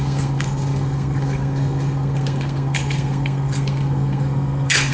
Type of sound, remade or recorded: remade